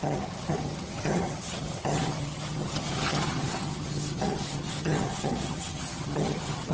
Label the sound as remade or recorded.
remade